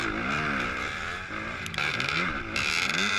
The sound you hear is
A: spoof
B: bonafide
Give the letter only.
B